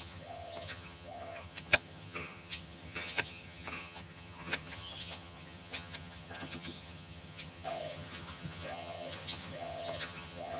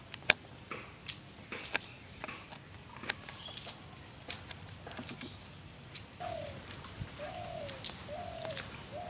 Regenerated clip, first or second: first